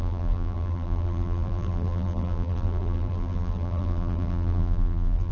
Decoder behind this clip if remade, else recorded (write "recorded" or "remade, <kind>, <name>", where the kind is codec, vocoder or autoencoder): remade, vocoder, BigVGAN v2